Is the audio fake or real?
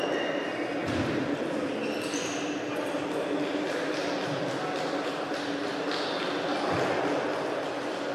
real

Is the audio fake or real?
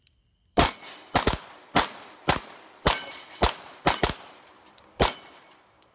fake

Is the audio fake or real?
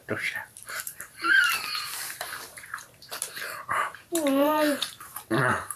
fake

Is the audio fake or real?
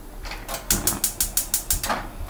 real